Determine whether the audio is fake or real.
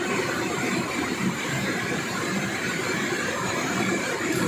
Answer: fake